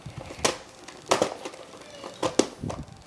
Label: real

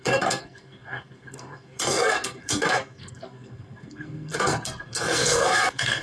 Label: fake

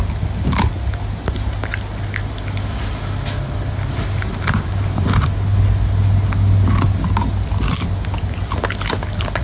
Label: real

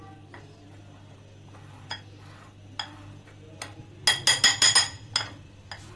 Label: real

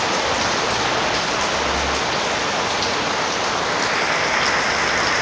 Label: real